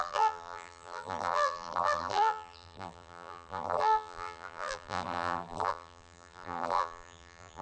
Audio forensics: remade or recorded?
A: remade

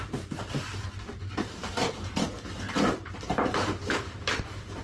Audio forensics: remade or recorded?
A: remade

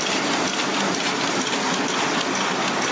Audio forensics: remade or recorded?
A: remade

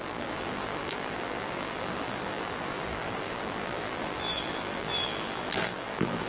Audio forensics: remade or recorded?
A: remade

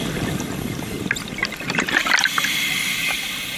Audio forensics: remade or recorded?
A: recorded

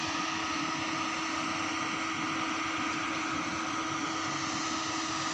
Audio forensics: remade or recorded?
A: recorded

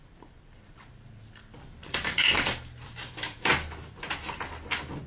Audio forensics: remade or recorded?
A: remade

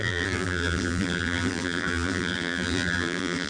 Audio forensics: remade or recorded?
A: remade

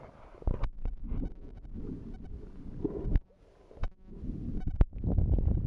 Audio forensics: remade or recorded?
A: recorded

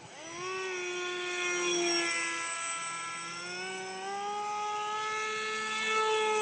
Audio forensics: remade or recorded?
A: recorded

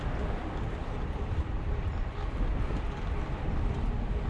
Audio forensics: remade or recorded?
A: remade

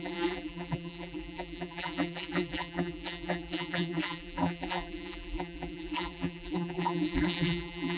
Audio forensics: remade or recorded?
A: remade